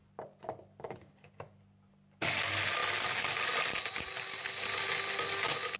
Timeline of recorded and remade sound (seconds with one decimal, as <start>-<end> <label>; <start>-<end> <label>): 0.0-5.8 recorded